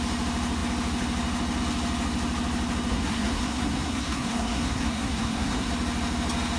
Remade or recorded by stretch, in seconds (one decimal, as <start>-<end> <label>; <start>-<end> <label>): 0.0-2.9 recorded; 2.9-5.7 remade; 5.7-6.6 recorded